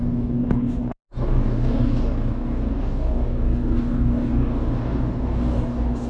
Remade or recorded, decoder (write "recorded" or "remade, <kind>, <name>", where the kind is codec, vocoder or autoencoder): remade, codec, DAC